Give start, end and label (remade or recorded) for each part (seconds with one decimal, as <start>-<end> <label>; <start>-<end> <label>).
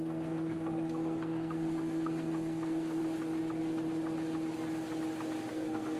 0.0-3.0 remade; 3.0-5.5 recorded; 5.5-6.0 remade